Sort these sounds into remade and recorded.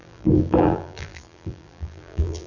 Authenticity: remade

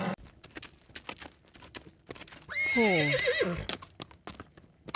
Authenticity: recorded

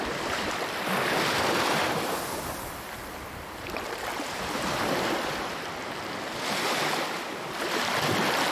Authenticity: recorded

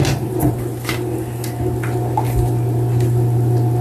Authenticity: recorded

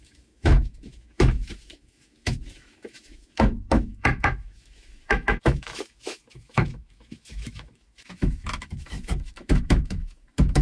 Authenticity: remade